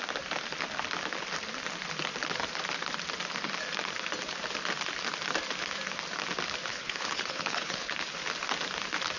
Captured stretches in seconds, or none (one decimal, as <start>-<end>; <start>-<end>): 0.0-6.7; 7.9-9.2